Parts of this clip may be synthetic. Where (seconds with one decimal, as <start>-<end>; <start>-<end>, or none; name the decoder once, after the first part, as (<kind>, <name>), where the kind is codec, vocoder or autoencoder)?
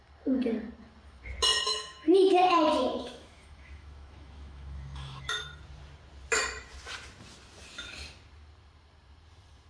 1.5-5.4 (autoencoder, DAC-VAE)